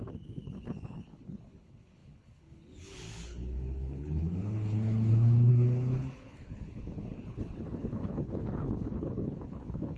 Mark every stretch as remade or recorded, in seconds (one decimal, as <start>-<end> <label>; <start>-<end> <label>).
0.0-10.0 remade